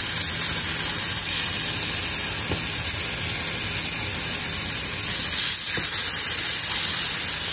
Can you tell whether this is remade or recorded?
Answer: recorded